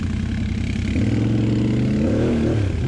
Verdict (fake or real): real